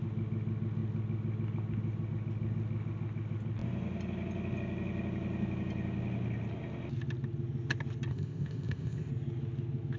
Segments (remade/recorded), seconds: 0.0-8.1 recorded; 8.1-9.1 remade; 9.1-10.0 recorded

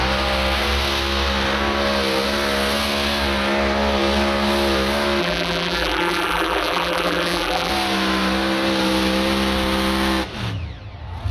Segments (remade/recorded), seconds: 0.0-5.2 recorded; 5.2-7.7 remade; 7.7-11.3 recorded